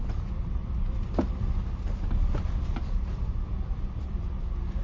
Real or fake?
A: fake